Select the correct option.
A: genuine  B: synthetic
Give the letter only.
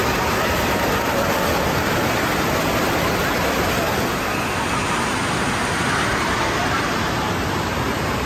A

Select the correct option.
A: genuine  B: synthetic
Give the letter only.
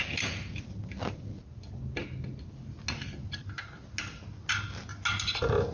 A